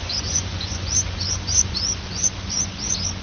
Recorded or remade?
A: remade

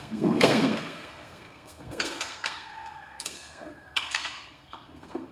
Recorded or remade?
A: remade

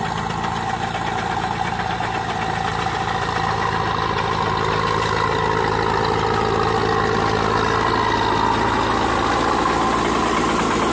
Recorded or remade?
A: recorded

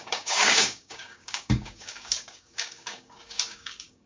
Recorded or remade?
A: remade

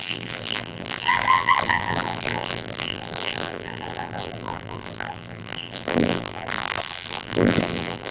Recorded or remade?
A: remade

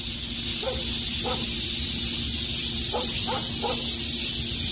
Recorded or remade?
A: recorded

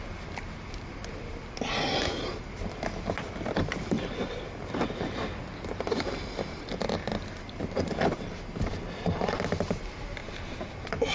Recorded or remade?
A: recorded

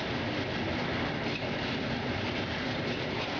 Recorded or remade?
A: recorded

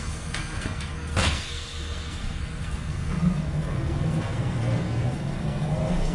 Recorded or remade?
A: remade